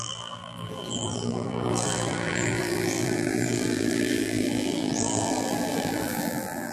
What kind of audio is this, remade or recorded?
remade